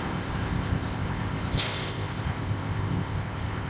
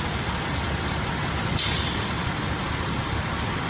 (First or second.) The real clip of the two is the second